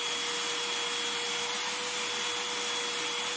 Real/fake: real